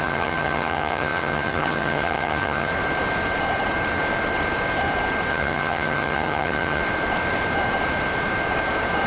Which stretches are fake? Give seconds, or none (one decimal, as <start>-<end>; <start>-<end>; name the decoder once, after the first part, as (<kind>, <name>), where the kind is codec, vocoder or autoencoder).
0.0-2.7 (vocoder, HiFi-GAN); 5.3-6.8